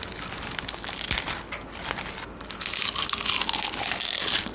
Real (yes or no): yes